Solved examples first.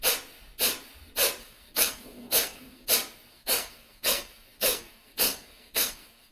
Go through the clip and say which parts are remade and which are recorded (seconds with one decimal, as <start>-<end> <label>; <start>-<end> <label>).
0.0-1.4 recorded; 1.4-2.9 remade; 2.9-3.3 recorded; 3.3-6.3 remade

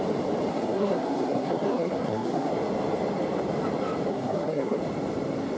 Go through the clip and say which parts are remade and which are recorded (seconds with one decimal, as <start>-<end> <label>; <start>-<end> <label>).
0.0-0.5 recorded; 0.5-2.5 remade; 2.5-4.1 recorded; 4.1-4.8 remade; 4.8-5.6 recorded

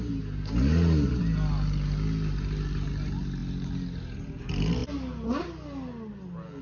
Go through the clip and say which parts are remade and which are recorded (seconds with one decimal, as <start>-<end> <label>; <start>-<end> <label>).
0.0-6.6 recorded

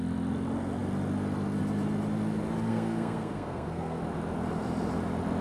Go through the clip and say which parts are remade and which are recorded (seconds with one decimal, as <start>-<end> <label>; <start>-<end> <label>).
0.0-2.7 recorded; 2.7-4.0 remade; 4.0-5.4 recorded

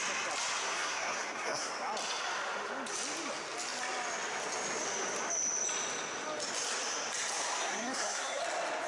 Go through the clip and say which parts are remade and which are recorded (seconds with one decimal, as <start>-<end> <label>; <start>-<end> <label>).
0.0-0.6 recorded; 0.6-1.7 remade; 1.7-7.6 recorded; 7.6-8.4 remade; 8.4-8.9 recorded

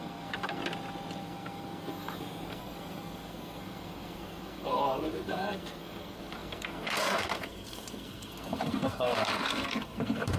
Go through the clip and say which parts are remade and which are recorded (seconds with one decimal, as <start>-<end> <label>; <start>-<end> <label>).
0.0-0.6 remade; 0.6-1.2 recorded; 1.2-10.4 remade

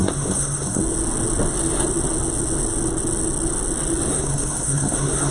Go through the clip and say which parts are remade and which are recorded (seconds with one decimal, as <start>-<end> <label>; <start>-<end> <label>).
0.0-0.8 remade; 0.8-4.1 recorded; 4.1-5.3 remade

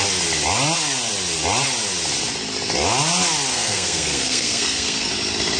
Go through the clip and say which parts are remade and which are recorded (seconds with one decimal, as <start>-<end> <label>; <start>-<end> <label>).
0.0-3.5 recorded; 3.5-5.1 remade; 5.1-5.6 recorded